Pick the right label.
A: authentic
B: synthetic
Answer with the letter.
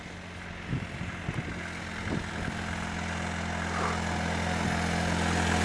A